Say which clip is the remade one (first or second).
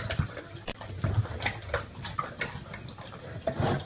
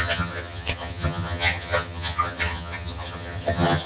second